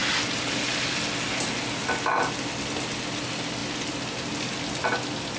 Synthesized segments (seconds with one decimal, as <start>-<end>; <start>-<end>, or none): none